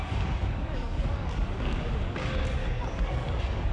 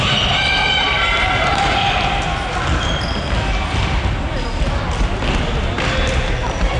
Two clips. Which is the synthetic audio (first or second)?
first